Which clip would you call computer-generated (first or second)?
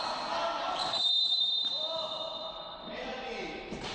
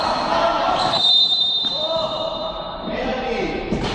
second